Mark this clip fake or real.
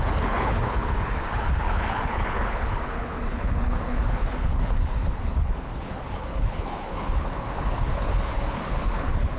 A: fake